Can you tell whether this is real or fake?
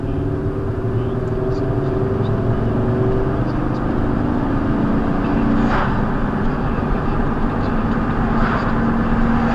real